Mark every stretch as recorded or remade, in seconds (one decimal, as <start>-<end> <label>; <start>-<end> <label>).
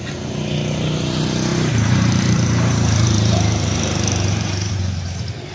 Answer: 0.0-1.5 recorded; 1.5-4.7 remade; 4.7-5.5 recorded